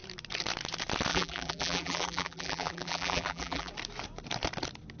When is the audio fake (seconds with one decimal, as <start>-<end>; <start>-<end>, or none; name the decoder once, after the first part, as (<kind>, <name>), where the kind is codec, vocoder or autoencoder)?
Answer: 1.1-3.7 (vocoder, BigVGAN v2)